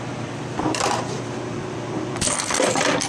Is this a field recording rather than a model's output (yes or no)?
no